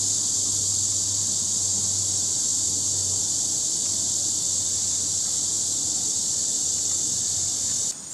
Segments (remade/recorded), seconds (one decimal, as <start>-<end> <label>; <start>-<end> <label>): 0.0-8.1 recorded